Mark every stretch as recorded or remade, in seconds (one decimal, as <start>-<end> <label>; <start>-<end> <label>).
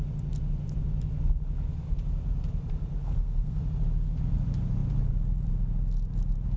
0.0-3.0 recorded; 3.0-3.6 remade; 3.6-6.6 recorded